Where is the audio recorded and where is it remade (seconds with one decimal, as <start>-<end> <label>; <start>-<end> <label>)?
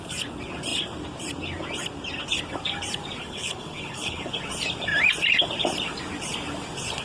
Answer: 0.0-3.2 recorded; 3.2-4.3 remade; 4.3-7.0 recorded